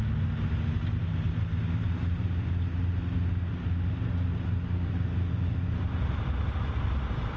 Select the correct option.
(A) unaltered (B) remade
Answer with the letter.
A